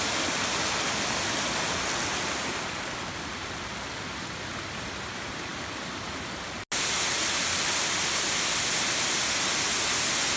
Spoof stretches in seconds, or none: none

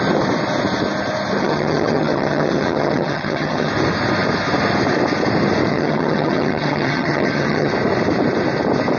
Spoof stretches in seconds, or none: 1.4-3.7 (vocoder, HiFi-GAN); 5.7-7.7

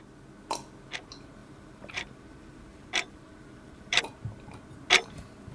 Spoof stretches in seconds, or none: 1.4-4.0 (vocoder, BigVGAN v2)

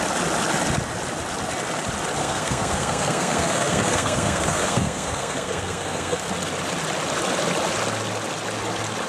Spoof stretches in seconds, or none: 2.2-6.3 (codec, SNAC)

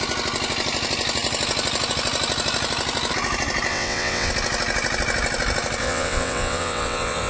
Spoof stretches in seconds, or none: 3.7-4.3 (vocoder, WaveNeXt); 5.8-7.3

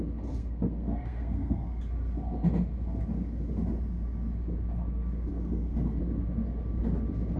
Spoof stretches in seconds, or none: 0.4-1.8 (codec, SNAC); 5.3-6.0